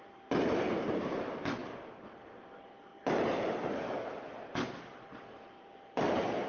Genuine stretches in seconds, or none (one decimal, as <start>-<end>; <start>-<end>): 1.6-2.2; 2.9-5.6